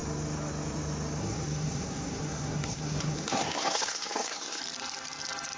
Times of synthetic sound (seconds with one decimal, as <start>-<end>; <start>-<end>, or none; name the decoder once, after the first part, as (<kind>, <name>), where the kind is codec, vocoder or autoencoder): 1.2-4.6 (codec, SNAC)